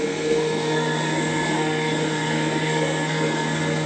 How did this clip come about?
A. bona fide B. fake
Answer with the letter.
B